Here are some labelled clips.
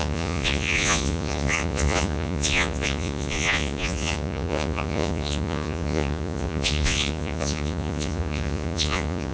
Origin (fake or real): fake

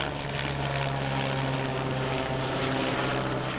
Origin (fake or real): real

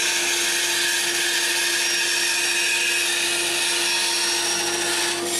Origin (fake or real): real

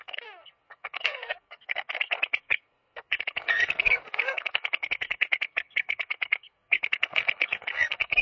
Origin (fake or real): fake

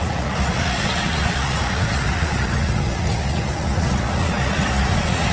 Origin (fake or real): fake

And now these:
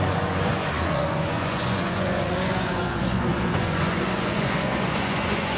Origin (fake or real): fake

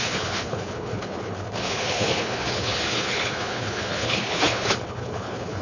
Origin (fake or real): fake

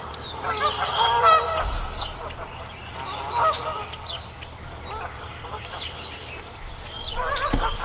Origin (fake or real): fake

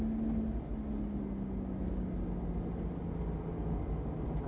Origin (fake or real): real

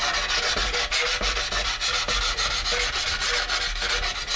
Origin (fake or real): real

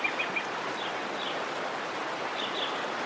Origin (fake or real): real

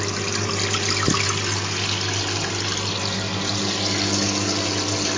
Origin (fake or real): real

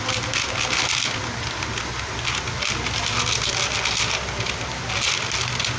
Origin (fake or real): real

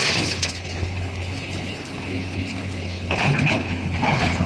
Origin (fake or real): fake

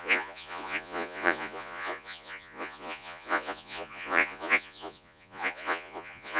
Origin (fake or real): fake